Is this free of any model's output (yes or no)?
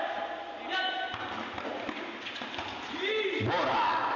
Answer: yes